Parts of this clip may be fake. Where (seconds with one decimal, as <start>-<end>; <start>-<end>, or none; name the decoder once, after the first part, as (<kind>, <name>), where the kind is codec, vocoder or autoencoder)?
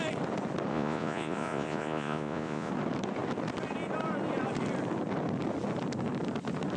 0.7-2.7 (vocoder, Vocos)